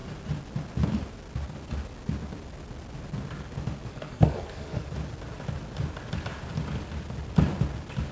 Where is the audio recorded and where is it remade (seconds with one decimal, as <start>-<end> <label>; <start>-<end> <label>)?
0.0-3.9 recorded; 3.9-4.9 remade; 4.9-8.1 recorded